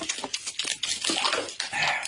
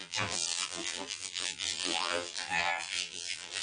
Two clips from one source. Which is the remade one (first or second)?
second